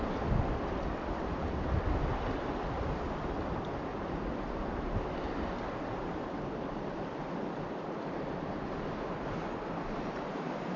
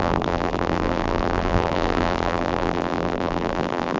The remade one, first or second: second